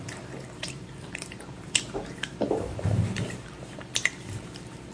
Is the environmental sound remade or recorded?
remade